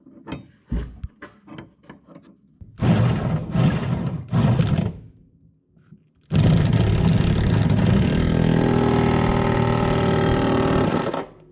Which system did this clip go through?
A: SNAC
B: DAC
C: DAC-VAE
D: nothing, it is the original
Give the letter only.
D